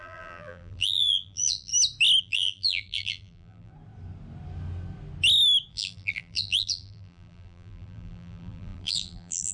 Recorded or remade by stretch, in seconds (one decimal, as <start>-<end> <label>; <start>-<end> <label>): 0.0-1.7 remade; 1.7-2.2 recorded; 2.2-3.7 remade; 3.7-5.7 recorded; 5.7-9.5 remade